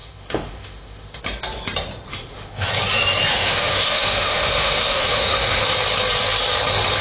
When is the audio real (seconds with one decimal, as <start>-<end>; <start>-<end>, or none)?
1.2-2.1; 2.7-3.3; 5.6-7.0